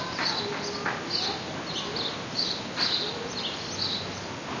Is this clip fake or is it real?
real